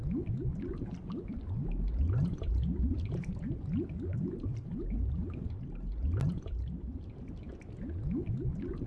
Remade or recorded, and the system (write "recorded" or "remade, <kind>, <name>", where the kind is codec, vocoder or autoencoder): recorded